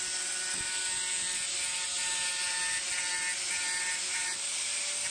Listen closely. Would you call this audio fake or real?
real